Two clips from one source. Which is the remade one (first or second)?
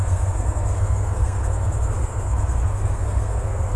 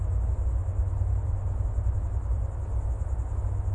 first